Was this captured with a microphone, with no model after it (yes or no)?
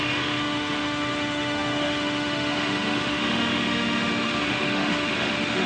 no